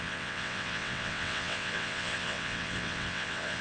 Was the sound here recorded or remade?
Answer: remade